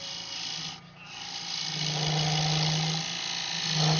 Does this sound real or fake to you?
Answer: real